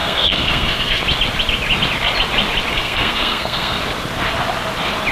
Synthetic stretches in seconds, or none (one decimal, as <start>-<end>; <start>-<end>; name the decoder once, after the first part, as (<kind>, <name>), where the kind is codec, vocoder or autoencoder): 0.0-1.0 (codec, SNAC); 2.7-3.8